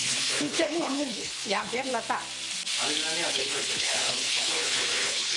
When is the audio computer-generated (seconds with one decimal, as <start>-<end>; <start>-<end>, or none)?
0.0-1.9; 3.3-5.4